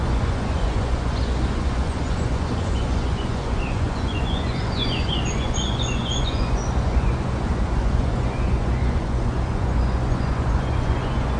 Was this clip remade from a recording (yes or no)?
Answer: yes